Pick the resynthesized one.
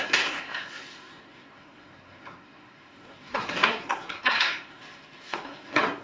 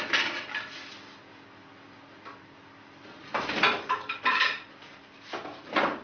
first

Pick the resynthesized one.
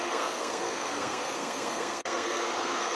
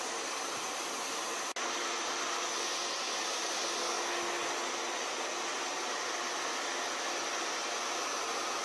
first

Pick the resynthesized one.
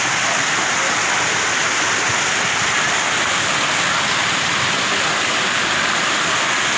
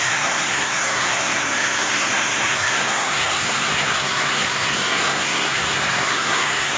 second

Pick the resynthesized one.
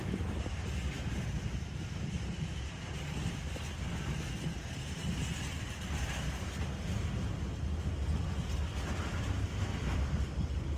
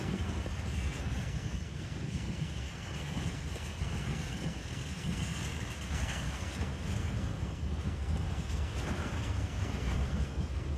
second